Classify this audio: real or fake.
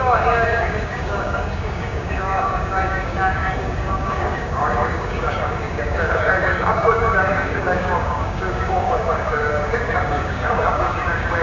fake